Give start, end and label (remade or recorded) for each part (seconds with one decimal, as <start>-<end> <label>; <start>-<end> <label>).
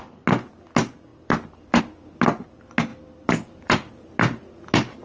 0.0-1.1 recorded; 1.1-1.8 remade; 1.8-2.9 recorded; 2.9-3.9 remade; 3.9-5.0 recorded